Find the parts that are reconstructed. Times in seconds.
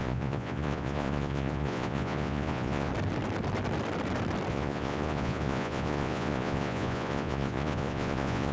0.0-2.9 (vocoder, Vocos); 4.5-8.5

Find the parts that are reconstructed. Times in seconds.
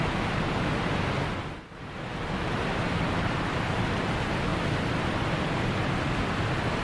none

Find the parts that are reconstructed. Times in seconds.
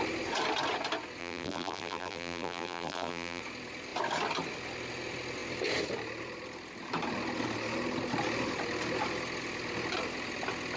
1.2-3.4 (vocoder, BigVGAN v2)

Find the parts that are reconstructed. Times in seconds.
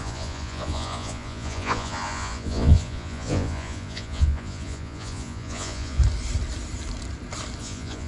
0.0-6.0 (vocoder, Vocos); 7.6-8.1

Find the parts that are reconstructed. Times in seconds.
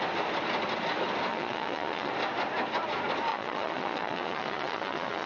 1.3-2.1 (vocoder, Vocos); 3.3-5.3